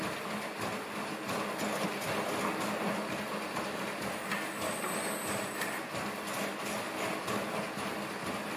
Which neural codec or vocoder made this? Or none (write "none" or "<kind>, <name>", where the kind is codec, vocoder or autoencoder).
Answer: none